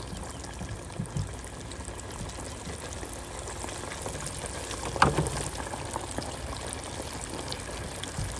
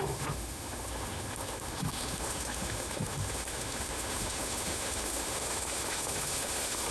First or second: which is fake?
second